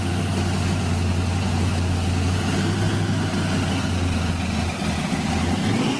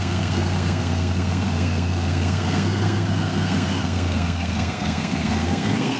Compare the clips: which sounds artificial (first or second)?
second